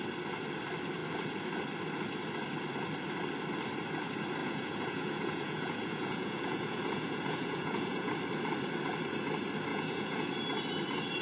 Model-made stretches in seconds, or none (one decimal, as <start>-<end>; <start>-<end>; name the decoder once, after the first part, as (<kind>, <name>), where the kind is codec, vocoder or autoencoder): 4.4-8.1 (vocoder, Vocos); 9.7-10.3